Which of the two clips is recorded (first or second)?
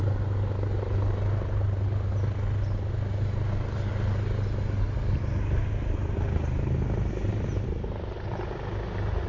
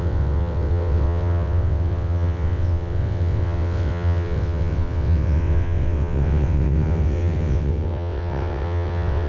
first